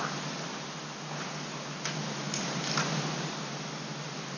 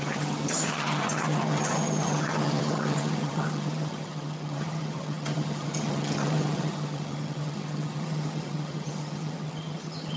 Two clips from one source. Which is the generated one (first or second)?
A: second